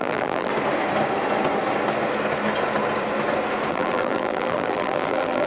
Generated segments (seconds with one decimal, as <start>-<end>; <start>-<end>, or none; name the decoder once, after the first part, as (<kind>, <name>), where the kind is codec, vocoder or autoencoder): 0.0-0.5 (vocoder, BigVGAN v2); 3.7-5.5